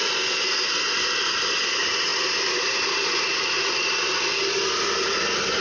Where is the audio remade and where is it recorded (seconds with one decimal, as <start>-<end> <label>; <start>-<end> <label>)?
0.0-5.6 recorded